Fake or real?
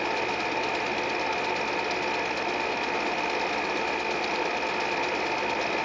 real